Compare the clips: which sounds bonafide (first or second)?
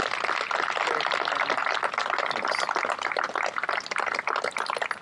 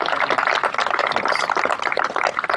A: first